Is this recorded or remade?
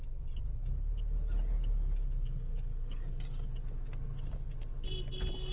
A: recorded